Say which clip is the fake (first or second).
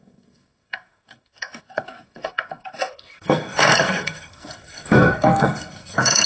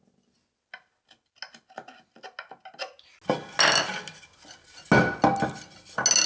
first